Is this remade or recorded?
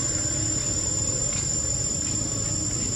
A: recorded